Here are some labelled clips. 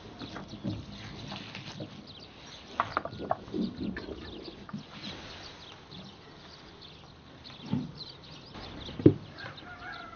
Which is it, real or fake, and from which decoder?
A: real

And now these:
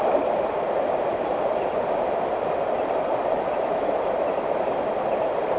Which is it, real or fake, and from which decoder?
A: real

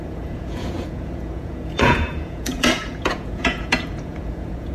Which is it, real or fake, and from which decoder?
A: fake, vocoder, Vocos